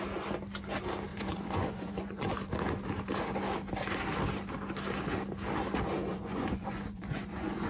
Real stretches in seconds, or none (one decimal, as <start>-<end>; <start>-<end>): 0.0-1.1; 2.3-6.1